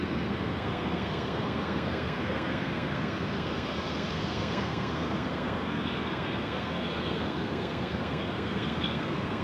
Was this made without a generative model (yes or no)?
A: no